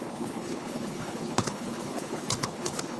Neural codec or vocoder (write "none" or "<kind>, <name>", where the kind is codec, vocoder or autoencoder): codec, HILCodec